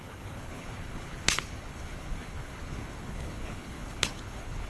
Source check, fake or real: fake